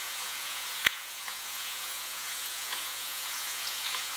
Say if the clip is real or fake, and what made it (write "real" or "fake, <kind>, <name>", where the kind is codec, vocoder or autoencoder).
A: fake, vocoder, Vocos